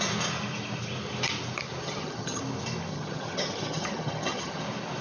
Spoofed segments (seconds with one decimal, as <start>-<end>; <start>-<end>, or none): 1.8-2.4; 2.9-4.6